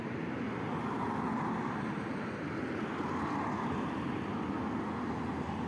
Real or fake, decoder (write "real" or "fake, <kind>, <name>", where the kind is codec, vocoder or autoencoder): real